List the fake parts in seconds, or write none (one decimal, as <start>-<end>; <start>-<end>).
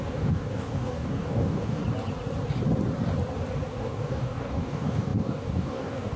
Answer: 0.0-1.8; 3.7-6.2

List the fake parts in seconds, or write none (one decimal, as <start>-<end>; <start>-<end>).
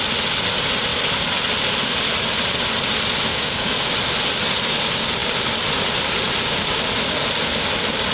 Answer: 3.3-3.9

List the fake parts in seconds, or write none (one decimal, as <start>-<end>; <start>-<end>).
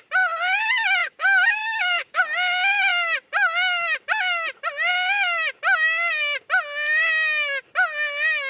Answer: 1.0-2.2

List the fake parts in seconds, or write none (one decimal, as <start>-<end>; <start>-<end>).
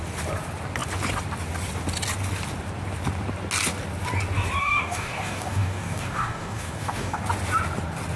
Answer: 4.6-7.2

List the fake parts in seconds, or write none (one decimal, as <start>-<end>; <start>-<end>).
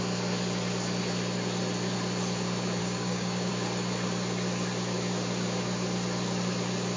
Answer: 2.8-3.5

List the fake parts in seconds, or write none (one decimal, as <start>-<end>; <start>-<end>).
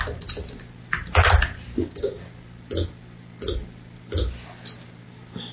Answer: 1.7-2.3